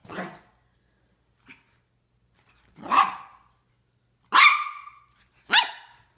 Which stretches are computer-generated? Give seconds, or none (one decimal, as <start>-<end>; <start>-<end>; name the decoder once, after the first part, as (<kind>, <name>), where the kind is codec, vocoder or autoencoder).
none

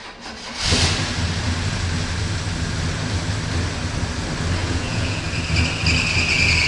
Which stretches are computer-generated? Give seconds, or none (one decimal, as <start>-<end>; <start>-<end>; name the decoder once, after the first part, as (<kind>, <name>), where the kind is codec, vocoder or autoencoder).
4.6-5.2 (vocoder, Vocos)

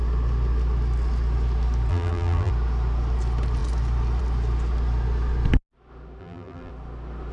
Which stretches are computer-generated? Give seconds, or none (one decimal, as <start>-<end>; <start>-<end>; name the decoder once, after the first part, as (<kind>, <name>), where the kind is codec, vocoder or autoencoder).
1.9-2.5 (vocoder, BigVGAN v2); 6.2-6.7